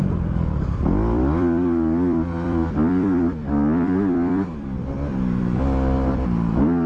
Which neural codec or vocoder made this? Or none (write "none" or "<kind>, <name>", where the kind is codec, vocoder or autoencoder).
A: vocoder, BigVGAN v2